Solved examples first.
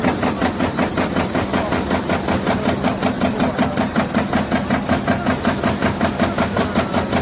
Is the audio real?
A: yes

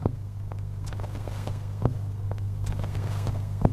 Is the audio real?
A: no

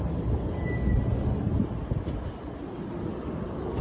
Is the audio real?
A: yes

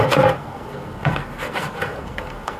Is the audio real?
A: no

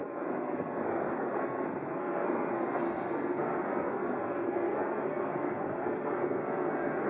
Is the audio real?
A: no